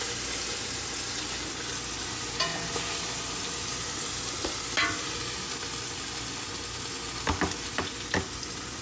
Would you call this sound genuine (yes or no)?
yes